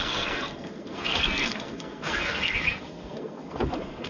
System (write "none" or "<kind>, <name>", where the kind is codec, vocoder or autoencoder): codec, SNAC